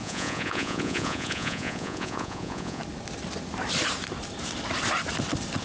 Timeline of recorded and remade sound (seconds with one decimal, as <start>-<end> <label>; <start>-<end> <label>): 0.0-2.8 remade; 2.8-5.6 recorded

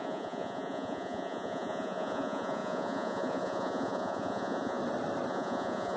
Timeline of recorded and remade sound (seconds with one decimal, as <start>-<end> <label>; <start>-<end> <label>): 0.0-4.8 remade; 4.8-5.3 recorded; 5.3-6.0 remade

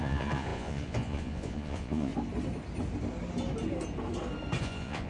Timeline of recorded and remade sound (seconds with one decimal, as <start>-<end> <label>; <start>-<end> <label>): 0.0-2.1 remade; 2.1-4.6 recorded; 4.6-5.1 remade

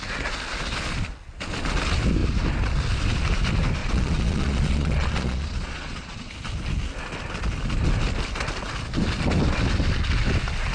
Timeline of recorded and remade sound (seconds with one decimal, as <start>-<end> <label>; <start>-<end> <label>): 0.0-3.8 recorded; 3.8-6.3 remade; 6.3-10.7 recorded

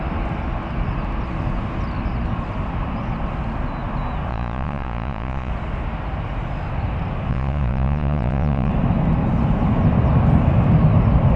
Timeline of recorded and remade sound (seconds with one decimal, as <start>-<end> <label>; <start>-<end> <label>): 0.0-4.3 recorded; 4.3-5.5 remade; 5.5-7.3 recorded; 7.3-8.7 remade; 8.7-11.4 recorded

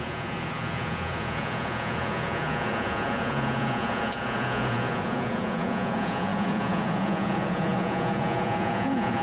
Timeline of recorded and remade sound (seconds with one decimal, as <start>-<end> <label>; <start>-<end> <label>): 0.0-9.2 remade

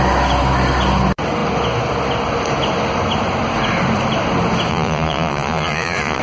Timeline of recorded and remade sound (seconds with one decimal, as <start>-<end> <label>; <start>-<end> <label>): 0.0-4.7 recorded; 4.7-6.2 remade